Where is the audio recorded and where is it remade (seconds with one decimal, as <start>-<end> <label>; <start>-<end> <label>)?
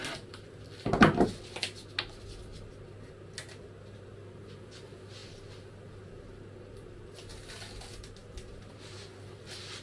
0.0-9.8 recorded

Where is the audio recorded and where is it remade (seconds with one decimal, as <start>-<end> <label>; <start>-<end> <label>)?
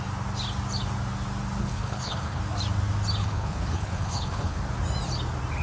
0.0-1.6 recorded; 1.6-2.4 remade; 2.4-3.2 recorded; 3.2-4.6 remade; 4.6-5.6 recorded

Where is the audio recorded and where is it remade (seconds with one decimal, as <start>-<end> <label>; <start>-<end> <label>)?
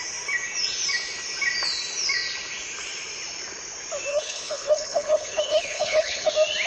0.0-4.1 recorded; 4.1-6.3 remade; 6.3-6.7 recorded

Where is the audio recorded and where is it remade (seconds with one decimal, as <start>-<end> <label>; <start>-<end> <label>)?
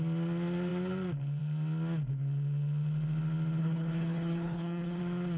0.0-3.6 recorded; 3.6-5.0 remade; 5.0-5.4 recorded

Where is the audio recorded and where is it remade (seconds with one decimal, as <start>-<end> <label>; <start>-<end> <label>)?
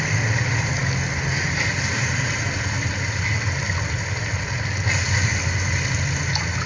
0.0-6.7 recorded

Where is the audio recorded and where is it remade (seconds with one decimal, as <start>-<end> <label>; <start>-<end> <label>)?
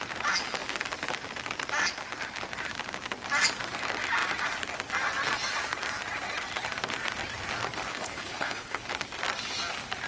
0.0-7.9 recorded; 7.9-8.8 remade; 8.8-10.1 recorded